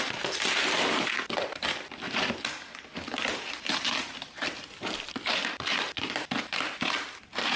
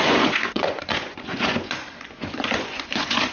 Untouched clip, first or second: first